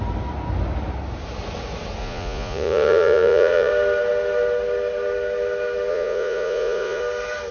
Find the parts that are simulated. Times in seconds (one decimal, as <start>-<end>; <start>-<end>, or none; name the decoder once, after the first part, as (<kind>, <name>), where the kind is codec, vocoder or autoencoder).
2.0-3.7 (vocoder, Vocos); 5.9-7.0